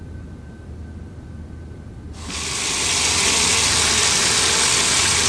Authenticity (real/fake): real